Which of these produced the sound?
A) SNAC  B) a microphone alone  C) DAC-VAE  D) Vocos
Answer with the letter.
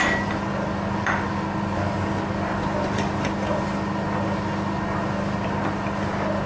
B